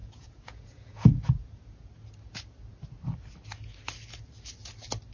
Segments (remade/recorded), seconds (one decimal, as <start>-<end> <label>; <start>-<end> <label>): 0.0-1.9 remade; 1.9-5.1 recorded